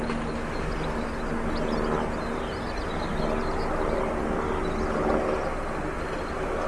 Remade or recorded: recorded